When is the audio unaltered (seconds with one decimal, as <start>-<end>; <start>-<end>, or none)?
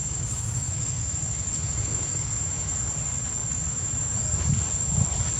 2.9-3.4; 4.1-5.4